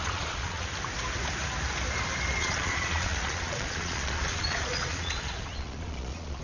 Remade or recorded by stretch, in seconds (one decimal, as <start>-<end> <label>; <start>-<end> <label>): 0.0-0.7 remade; 0.7-2.4 recorded; 2.4-6.4 remade